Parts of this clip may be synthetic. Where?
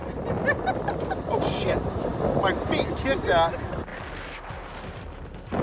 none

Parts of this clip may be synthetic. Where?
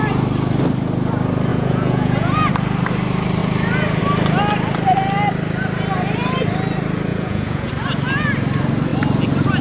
1.5-2.5 (vocoder, Vocos); 7.1-7.7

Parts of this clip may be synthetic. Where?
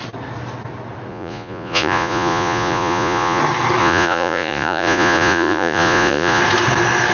1.1-3.4 (vocoder, Vocos); 3.8-6.4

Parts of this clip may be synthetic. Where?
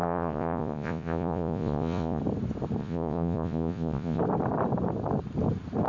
0.0-2.2 (vocoder, Vocos); 2.8-4.2